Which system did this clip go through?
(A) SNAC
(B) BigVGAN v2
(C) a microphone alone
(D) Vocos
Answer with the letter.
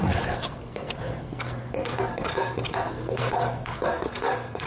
A